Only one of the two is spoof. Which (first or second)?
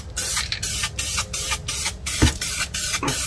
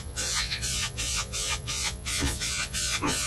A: second